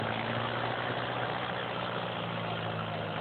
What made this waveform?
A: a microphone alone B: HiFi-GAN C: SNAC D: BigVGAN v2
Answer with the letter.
A